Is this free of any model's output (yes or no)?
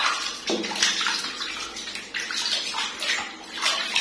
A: yes